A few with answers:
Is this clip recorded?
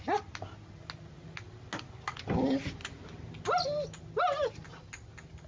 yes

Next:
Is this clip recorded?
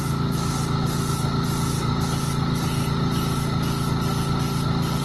yes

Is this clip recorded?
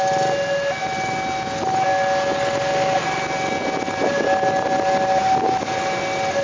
yes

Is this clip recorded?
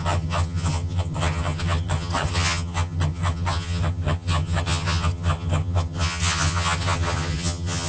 no